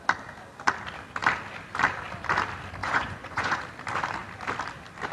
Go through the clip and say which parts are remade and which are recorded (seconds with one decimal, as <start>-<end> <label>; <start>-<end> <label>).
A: 0.0-2.8 recorded; 2.8-3.6 remade; 3.6-5.1 recorded